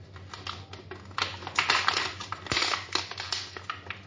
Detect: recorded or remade recorded